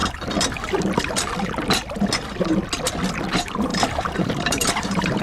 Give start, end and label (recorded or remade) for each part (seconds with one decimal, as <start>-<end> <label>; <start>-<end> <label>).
0.0-3.1 recorded; 3.1-5.2 remade